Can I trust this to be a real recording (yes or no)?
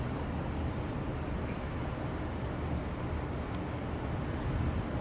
yes